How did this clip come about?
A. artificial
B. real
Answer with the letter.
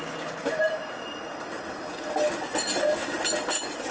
B